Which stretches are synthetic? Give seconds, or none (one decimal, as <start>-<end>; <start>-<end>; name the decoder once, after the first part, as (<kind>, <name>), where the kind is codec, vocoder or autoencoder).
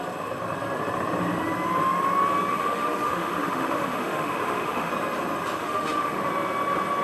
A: 2.5-4.9 (autoencoder, DAC-VAE); 5.6-6.3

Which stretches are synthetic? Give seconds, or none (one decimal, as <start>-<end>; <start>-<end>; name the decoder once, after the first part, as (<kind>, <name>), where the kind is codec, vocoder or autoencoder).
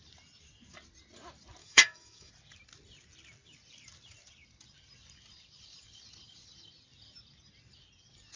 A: 1.6-2.3 (autoencoder, DAC-VAE)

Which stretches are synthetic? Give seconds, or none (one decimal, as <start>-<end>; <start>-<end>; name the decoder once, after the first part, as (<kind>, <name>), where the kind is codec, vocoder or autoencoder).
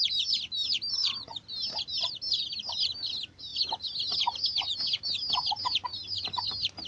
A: none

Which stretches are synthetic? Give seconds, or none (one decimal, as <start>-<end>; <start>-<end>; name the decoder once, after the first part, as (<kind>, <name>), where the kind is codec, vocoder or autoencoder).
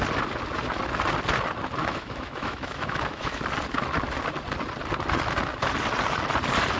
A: 1.8-3.4 (autoencoder, DAC-VAE)